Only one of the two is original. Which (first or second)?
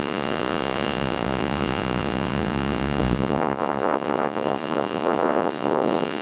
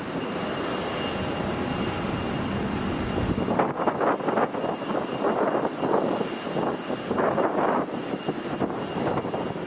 second